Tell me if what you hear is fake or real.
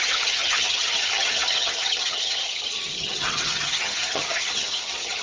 fake